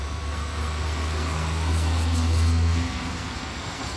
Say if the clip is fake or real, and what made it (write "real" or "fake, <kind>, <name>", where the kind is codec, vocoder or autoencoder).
fake, codec, SNAC